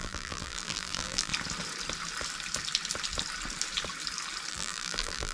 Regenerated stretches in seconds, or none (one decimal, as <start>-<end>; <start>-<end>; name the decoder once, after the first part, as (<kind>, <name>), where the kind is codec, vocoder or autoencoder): 0.0-1.3 (vocoder, BigVGAN v2); 4.5-5.3